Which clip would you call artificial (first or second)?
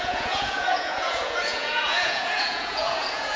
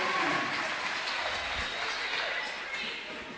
first